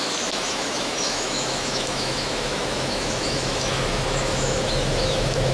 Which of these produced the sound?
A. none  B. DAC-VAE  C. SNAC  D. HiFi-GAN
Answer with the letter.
B